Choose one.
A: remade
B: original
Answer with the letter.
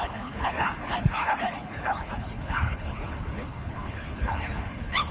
A